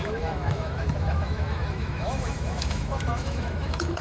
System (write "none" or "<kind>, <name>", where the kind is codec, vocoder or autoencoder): autoencoder, DAC-VAE